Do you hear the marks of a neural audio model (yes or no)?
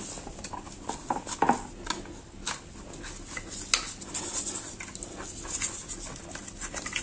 no